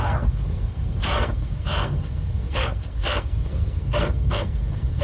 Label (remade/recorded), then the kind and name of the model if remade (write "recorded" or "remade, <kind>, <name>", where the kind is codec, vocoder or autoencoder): remade, codec, SNAC